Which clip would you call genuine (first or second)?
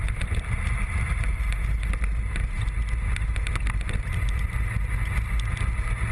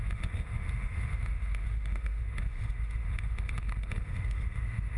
first